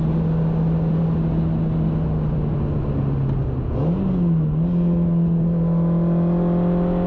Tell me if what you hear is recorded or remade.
recorded